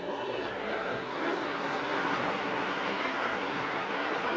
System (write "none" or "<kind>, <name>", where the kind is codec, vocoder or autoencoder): codec, SNAC